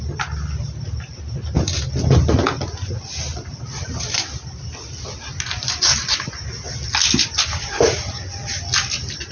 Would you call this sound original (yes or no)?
yes